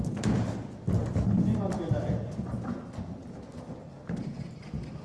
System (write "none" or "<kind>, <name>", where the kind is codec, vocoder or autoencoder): none